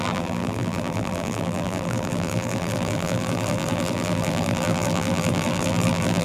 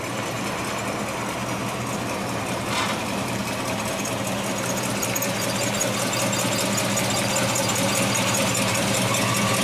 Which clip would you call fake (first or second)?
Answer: first